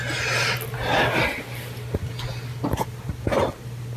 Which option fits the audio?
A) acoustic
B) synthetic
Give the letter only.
A